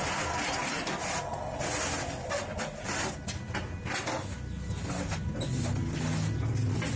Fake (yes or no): no